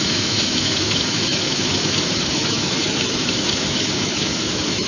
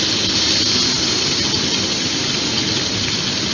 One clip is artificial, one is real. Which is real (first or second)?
second